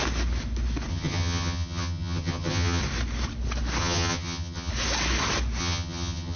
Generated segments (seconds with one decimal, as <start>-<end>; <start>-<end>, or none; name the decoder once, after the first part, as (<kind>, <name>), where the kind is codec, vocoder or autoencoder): 0.9-2.8 (vocoder, HiFi-GAN); 3.8-4.7; 5.6-6.4